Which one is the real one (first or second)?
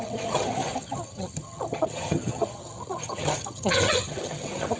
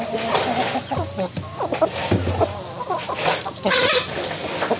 second